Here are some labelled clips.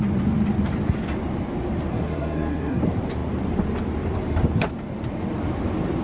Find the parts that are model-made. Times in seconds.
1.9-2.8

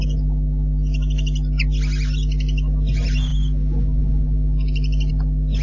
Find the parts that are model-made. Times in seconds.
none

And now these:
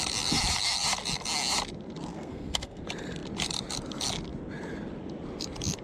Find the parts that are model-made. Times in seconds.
2.1-2.8

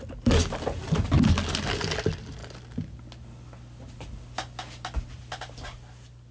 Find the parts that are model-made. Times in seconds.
none

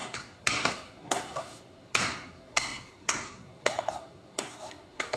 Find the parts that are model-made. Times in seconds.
0.0-5.2

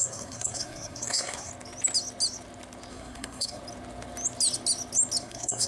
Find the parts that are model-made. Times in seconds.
0.0-1.5; 2.9-3.6; 5.2-5.7

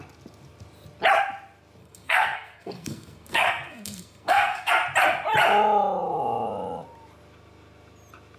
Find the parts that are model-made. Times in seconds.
1.8-4.7